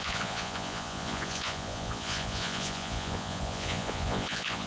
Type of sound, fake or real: fake